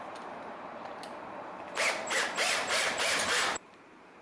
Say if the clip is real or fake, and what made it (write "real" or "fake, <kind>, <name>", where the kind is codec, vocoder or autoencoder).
fake, vocoder, BigVGAN v2